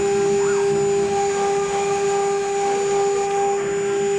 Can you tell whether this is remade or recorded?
recorded